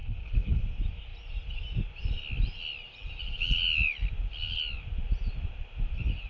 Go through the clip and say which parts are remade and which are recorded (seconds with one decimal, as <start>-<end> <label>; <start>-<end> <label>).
0.0-0.6 remade; 0.6-6.3 recorded